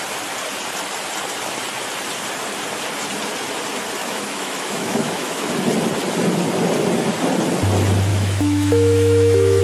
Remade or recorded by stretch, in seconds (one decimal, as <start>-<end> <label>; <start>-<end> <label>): 0.0-4.0 recorded; 4.0-5.5 remade; 5.5-8.1 recorded; 8.1-9.6 remade